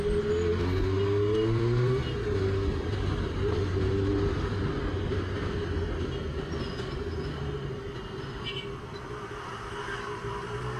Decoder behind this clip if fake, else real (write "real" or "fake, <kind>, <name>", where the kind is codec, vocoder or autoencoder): real